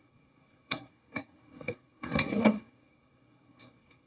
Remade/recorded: remade